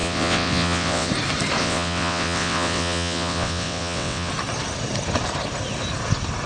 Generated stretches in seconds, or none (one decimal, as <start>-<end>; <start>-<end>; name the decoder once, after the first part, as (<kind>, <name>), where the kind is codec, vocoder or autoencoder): 0.0-1.1 (vocoder, WaveNeXt); 1.6-4.3